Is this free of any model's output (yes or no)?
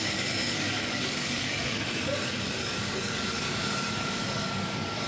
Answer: no